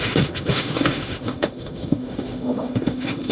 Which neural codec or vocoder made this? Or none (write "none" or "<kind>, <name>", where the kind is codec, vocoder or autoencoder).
autoencoder, DAC-VAE